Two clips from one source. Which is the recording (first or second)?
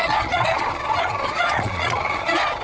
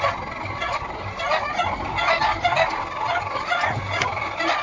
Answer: second